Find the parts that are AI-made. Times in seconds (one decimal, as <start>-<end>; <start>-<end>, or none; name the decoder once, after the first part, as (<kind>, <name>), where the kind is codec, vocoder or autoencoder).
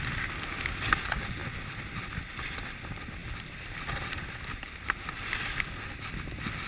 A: none